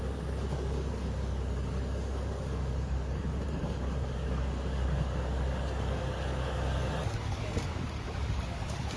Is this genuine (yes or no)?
no